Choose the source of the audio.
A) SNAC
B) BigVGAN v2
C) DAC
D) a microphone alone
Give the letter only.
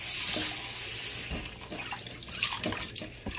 D